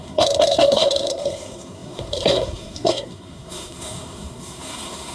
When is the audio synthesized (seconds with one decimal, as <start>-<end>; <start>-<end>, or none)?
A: 0.0-5.1